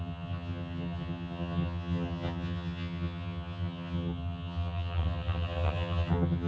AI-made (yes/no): yes